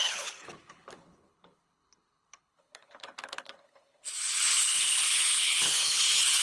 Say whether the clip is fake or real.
fake